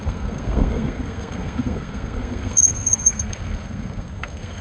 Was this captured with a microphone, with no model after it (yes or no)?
no